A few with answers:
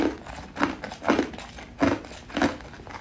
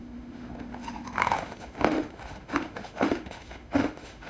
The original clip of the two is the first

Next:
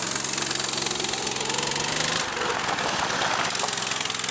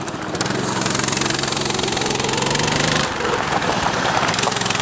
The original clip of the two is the first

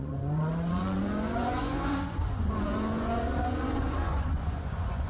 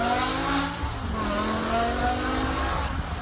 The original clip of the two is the second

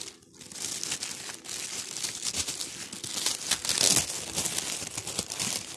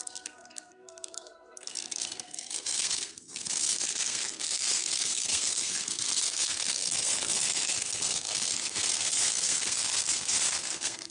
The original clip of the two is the first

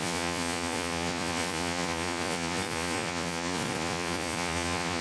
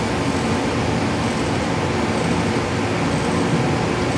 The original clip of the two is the second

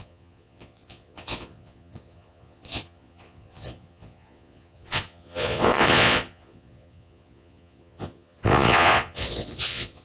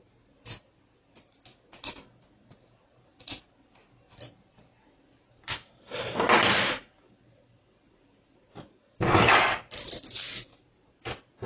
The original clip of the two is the second